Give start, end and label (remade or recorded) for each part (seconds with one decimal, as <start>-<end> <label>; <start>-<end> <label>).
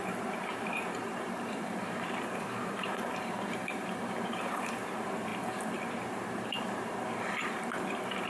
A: 0.0-8.3 remade